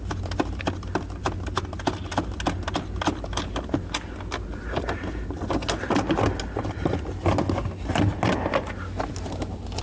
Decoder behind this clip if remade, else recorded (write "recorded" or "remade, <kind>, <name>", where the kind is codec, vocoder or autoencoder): recorded